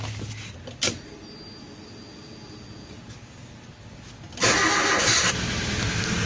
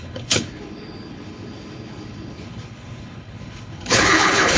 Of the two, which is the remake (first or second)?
second